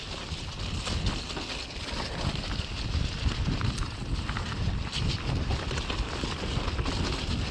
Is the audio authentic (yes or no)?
yes